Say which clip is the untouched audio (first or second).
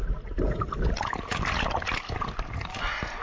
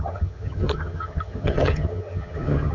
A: first